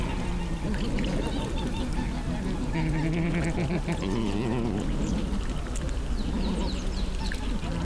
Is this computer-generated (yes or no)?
no